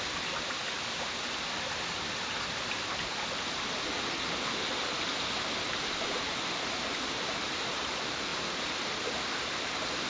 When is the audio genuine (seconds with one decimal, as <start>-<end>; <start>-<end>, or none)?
0.0-10.1

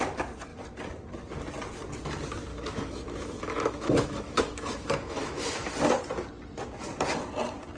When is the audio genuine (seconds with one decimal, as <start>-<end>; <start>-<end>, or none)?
0.0-2.5; 5.7-7.8

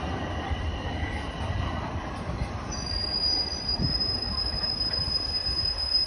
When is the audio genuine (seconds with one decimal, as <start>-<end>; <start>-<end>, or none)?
none

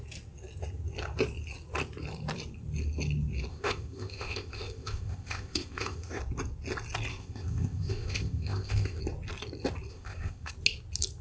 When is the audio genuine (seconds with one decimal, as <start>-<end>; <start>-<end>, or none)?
0.0-3.5; 6.2-7.1; 9.0-9.9; 10.5-11.2

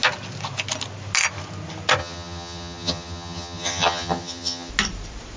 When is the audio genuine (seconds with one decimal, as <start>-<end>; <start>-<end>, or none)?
0.0-2.0; 4.7-5.4

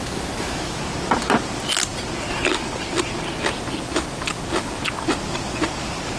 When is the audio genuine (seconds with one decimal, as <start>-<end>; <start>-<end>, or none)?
0.8-6.2

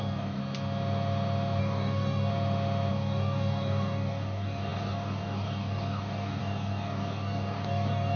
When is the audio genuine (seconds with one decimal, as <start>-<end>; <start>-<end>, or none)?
0.4-1.6; 2.3-2.9

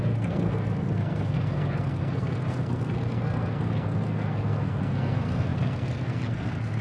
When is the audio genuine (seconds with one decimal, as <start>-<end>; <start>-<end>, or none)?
none